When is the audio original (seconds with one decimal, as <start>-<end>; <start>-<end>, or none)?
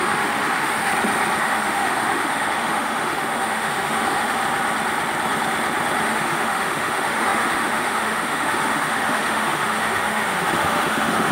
0.9-1.4; 4.4-6.0